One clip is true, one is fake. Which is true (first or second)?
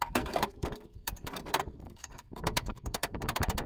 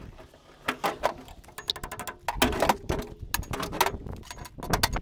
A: second